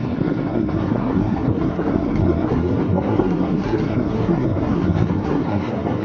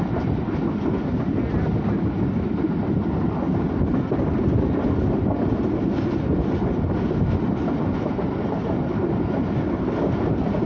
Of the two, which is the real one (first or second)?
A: second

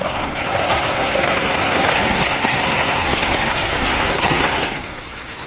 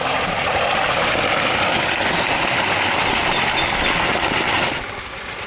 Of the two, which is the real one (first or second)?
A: second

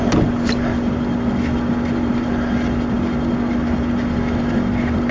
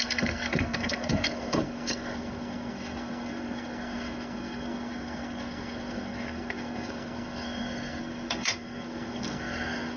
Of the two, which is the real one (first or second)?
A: first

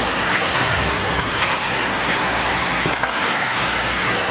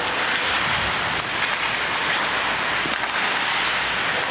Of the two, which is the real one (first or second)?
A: second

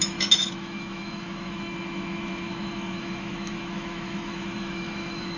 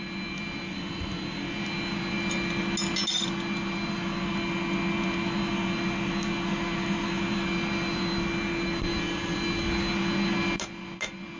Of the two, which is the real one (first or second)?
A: second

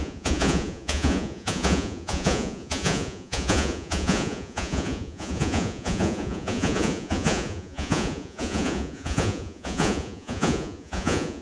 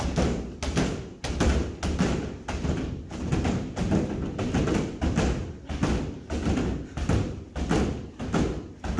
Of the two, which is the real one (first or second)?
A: second